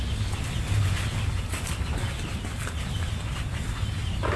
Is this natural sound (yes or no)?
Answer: yes